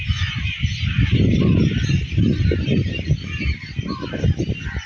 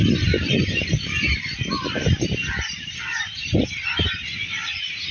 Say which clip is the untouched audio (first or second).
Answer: first